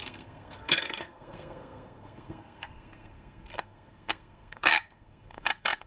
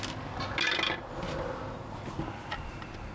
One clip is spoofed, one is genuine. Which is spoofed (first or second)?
first